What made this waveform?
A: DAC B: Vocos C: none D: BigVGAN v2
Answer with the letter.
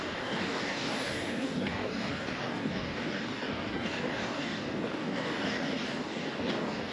A